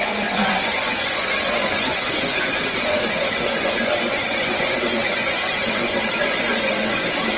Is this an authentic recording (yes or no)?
no